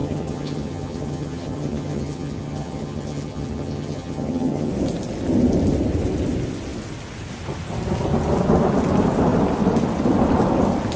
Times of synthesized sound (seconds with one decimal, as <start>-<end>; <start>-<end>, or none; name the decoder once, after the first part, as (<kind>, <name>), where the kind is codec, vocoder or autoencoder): 0.0-4.7 (vocoder, HiFi-GAN)